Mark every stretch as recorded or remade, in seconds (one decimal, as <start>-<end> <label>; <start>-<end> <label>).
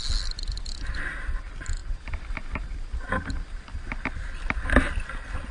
0.0-5.5 recorded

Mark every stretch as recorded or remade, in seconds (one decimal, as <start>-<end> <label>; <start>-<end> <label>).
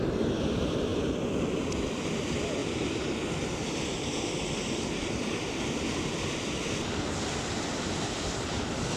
0.0-0.9 recorded; 0.9-2.1 remade; 2.1-9.0 recorded